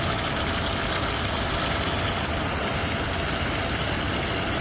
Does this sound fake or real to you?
real